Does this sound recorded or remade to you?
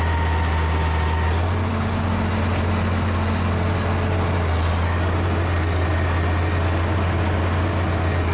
recorded